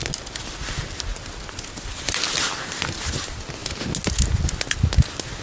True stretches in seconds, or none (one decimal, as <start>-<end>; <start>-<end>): 0.0-5.4